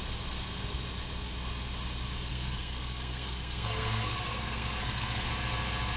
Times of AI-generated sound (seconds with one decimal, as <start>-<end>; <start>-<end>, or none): 2.3-5.3